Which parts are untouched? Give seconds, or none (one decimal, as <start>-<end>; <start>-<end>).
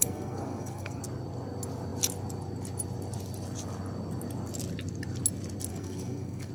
1.0-5.7